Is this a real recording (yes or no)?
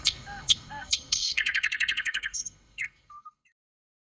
no